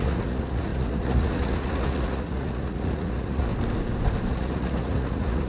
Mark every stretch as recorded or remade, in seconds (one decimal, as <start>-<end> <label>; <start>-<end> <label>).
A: 0.0-3.5 remade; 3.5-4.3 recorded; 4.3-5.5 remade